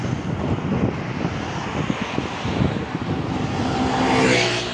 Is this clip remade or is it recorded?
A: recorded